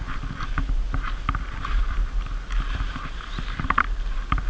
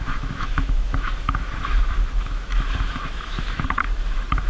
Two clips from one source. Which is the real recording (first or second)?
first